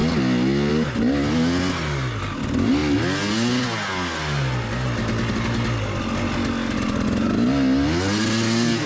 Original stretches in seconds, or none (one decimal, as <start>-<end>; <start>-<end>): 0.0-8.9